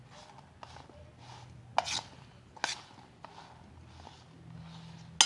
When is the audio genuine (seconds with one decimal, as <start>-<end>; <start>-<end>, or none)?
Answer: 0.0-5.3